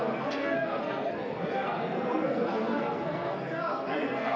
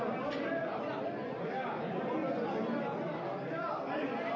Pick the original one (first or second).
second